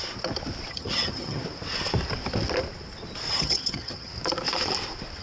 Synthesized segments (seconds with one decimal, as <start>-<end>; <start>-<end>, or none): 0.7-1.4; 3.3-4.1